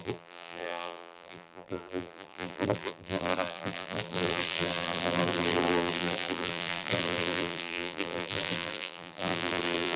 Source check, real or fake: fake